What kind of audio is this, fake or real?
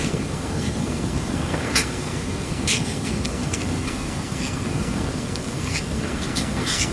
fake